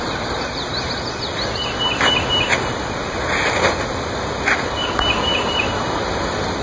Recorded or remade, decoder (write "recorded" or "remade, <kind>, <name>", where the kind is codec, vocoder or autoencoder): recorded